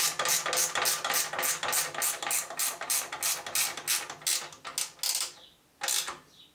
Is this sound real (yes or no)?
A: yes